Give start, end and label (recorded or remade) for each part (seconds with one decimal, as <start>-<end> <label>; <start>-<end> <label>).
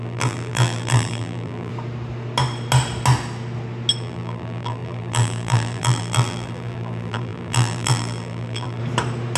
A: 0.0-1.7 remade; 1.7-4.0 recorded; 4.0-8.8 remade; 8.8-9.4 recorded